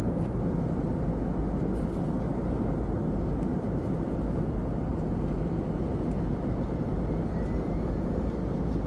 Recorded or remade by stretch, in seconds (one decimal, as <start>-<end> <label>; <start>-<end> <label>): 0.0-3.5 recorded; 3.5-4.1 remade; 4.1-4.9 recorded; 4.9-8.9 remade